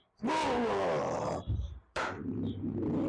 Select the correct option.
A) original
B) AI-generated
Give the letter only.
B